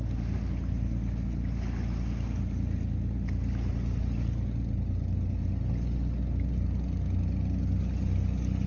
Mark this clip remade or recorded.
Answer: recorded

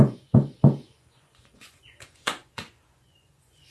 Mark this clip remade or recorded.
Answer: remade